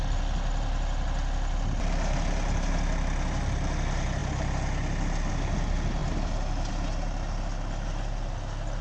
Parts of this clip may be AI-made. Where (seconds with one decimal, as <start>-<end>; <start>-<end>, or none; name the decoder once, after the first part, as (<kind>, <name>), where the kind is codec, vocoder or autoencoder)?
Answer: none